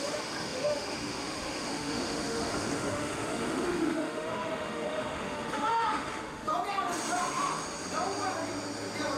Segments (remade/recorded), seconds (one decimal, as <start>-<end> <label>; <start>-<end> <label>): 0.0-6.5 remade; 6.5-9.2 recorded